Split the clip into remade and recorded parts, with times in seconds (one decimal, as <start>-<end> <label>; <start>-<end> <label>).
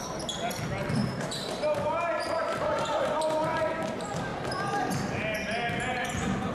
0.0-1.0 recorded; 1.0-3.2 remade; 3.2-6.5 recorded